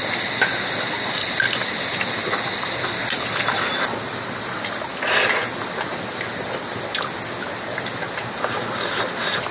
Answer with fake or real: real